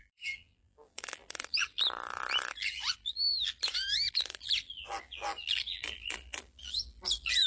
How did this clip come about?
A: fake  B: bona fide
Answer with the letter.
A